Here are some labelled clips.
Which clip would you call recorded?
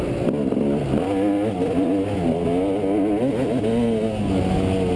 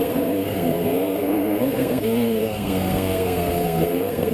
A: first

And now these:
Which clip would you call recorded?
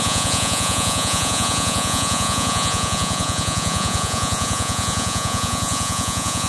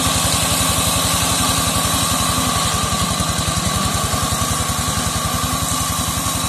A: second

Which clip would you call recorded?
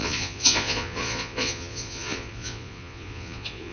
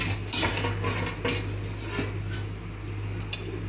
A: second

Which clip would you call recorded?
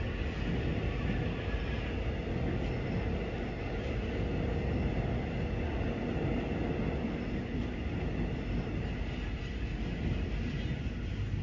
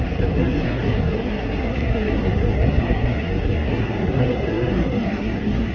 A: first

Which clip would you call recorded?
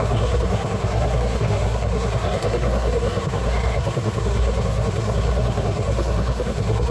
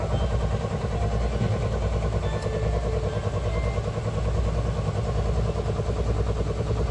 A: second